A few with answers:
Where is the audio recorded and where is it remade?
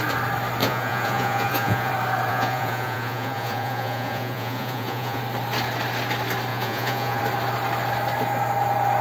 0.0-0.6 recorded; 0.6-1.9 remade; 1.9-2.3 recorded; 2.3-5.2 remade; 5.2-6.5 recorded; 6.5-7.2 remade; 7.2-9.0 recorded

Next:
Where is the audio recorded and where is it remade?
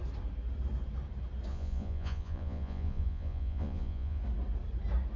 0.0-1.5 recorded; 1.5-4.2 remade; 4.2-5.2 recorded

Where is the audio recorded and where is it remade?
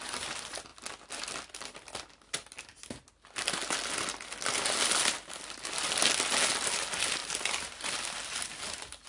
0.0-9.1 recorded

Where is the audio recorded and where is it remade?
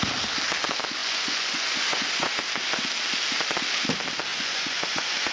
0.0-1.0 recorded; 1.0-2.4 remade; 2.4-4.3 recorded; 4.3-5.3 remade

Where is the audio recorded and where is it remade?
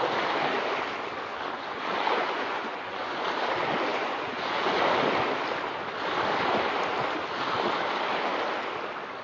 0.0-1.3 recorded; 1.3-3.3 remade; 3.3-3.9 recorded; 3.9-4.8 remade; 4.8-9.2 recorded